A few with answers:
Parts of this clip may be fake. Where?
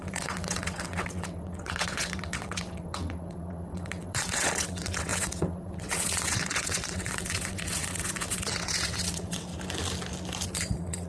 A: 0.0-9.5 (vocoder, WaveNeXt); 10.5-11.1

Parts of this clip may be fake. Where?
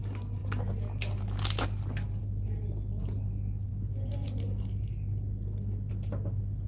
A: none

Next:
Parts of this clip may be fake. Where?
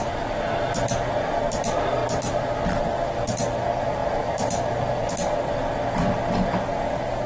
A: 4.0-5.1 (vocoder, BigVGAN v2)